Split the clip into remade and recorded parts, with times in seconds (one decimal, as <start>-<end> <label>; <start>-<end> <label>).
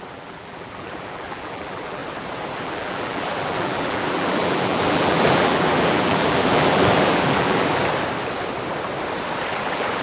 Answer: 0.0-2.0 remade; 2.0-2.6 recorded; 2.6-7.8 remade; 7.8-9.5 recorded; 9.5-10.0 remade